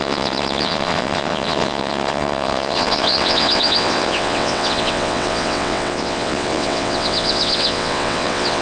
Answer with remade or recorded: remade